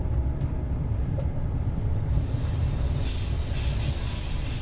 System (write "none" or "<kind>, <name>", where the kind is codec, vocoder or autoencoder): none